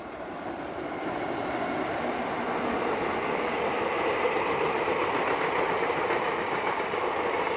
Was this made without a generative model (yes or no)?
yes